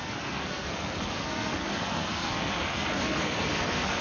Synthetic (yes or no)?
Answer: yes